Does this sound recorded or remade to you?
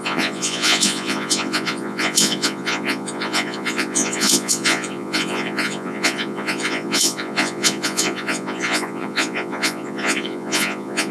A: remade